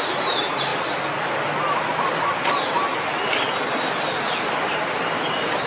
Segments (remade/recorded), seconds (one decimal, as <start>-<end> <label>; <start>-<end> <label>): 0.0-5.7 recorded